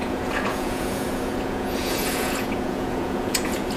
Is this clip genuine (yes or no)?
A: no